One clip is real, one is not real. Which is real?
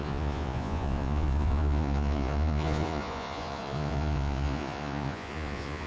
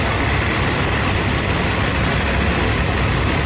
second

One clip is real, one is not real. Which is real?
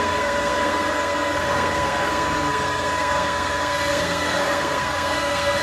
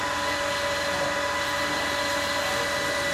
second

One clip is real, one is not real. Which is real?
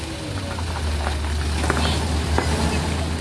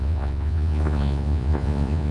first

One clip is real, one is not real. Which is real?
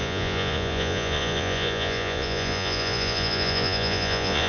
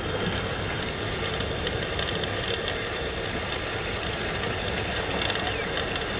second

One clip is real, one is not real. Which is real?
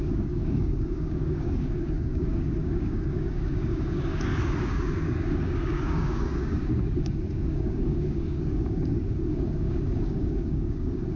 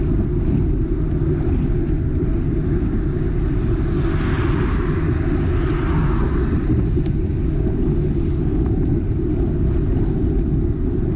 second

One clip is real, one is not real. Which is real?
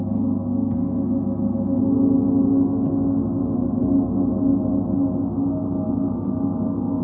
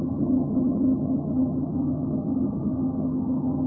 first